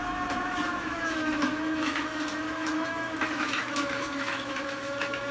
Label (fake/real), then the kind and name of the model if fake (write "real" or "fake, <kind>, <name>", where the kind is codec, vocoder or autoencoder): fake, autoencoder, DAC-VAE